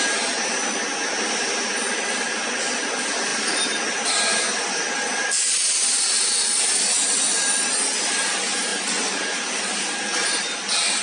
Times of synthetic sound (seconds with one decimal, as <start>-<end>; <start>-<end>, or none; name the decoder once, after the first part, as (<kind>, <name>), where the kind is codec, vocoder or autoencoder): none